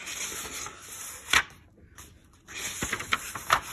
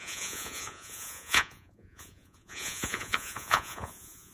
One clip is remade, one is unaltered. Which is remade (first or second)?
second